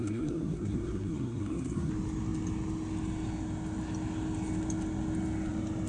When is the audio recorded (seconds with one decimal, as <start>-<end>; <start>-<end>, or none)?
1.9-5.9